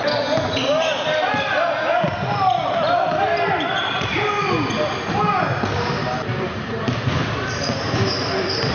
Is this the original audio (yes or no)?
yes